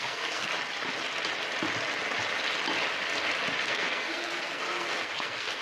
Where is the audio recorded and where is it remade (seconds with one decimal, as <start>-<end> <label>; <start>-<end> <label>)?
0.0-0.5 remade; 0.5-3.6 recorded; 3.6-5.6 remade